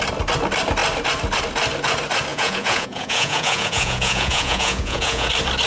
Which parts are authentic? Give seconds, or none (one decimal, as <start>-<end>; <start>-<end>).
0.0-2.3; 5.3-5.7

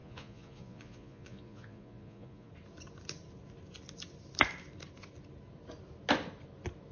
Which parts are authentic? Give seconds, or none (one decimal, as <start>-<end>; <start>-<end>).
2.5-6.9

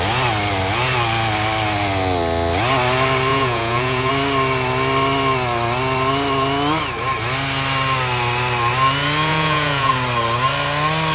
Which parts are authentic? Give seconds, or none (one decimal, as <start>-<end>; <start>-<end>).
0.0-3.3; 4.1-9.3; 9.9-11.1

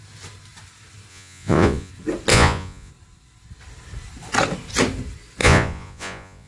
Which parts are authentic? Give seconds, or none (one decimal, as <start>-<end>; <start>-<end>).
0.0-1.1; 1.9-2.3; 2.9-5.4

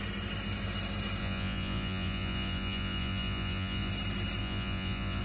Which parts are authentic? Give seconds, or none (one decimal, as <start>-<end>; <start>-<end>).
0.0-1.2; 3.9-4.4

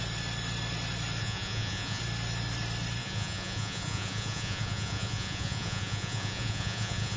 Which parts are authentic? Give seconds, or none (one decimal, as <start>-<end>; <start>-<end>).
0.0-1.2; 2.0-3.0